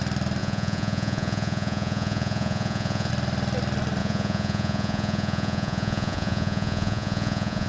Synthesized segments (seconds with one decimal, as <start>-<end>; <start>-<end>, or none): 0.4-3.1; 4.0-7.7